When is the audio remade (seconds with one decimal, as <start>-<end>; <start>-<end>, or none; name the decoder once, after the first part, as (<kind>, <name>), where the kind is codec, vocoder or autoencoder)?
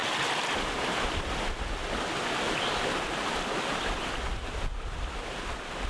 none